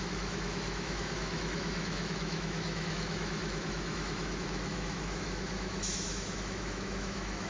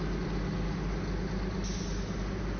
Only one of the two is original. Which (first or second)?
second